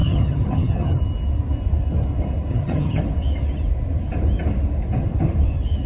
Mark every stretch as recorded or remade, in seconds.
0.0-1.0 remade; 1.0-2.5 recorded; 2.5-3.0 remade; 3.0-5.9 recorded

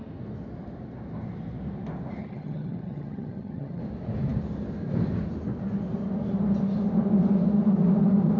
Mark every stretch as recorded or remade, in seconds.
0.0-2.2 recorded; 2.2-3.8 remade; 3.8-8.4 recorded

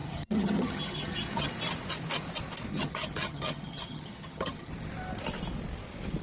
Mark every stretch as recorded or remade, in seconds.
0.0-1.5 remade; 1.5-2.7 recorded; 2.7-4.7 remade; 4.7-6.2 recorded